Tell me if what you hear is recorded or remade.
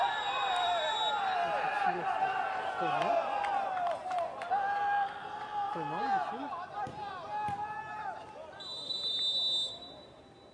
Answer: recorded